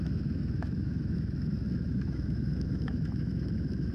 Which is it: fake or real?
fake